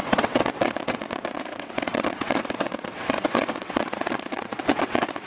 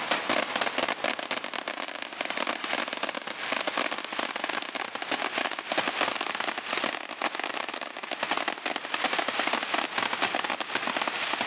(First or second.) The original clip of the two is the second